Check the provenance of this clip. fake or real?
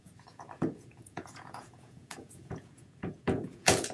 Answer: fake